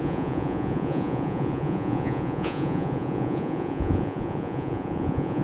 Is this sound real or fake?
fake